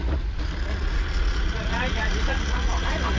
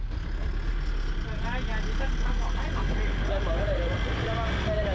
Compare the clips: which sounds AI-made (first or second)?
first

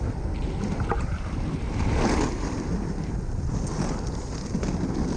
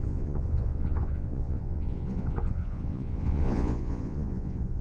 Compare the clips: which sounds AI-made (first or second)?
second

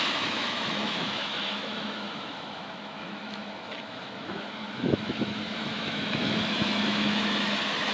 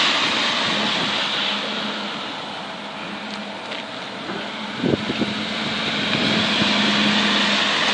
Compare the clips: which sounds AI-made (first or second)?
first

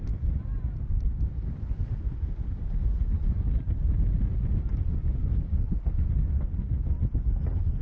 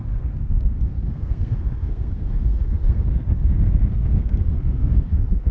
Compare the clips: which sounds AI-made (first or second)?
second